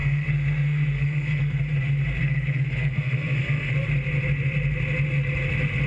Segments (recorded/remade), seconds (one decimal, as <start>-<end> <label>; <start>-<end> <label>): 0.0-1.6 remade; 1.6-2.2 recorded; 2.2-3.7 remade; 3.7-5.9 recorded